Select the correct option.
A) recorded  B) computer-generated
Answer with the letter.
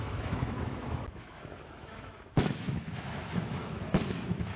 B